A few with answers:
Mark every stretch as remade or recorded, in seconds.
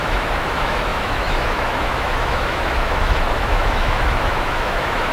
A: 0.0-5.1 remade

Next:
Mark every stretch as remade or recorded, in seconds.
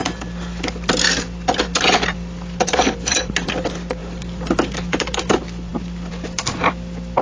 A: 0.0-7.2 recorded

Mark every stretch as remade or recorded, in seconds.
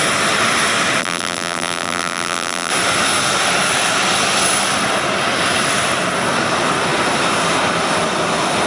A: 0.0-1.0 recorded; 1.0-2.7 remade; 2.7-8.7 recorded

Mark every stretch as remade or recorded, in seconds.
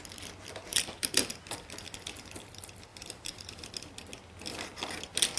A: 0.0-0.7 recorded; 0.7-1.3 remade; 1.3-2.9 recorded; 2.9-3.7 remade; 3.7-5.4 recorded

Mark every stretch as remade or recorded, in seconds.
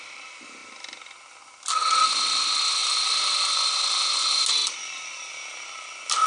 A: 0.0-2.8 recorded; 2.8-3.5 remade; 3.5-4.6 recorded; 4.6-5.3 remade; 5.3-6.3 recorded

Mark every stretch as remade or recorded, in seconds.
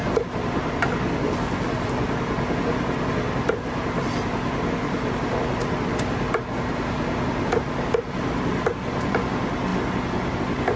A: 0.0-10.8 recorded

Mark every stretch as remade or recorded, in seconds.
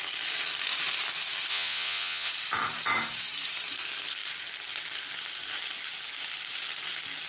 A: 0.0-1.5 recorded; 1.5-2.3 remade; 2.3-7.3 recorded